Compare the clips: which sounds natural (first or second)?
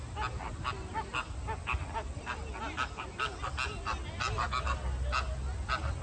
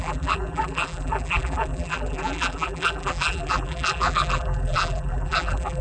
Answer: first